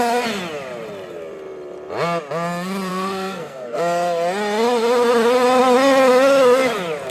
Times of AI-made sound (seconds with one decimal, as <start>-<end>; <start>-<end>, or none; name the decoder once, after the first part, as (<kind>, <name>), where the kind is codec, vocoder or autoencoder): 2.9-3.8 (codec, SNAC)